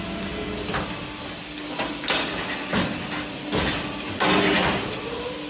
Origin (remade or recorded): recorded